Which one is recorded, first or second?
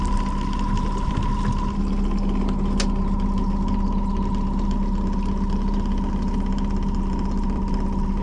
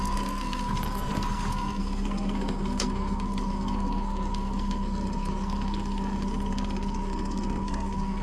first